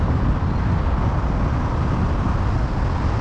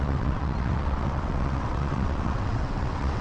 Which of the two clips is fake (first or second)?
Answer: second